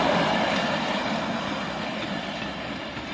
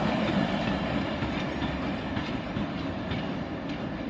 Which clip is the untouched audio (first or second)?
first